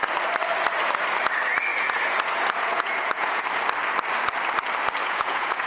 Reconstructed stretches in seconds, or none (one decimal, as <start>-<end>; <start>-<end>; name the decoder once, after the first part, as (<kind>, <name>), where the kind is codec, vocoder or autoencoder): 1.7-3.4 (vocoder, Vocos); 5.0-5.7